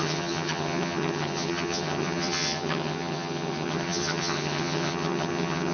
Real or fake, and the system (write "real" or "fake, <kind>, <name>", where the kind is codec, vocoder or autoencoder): fake, vocoder, HiFi-GAN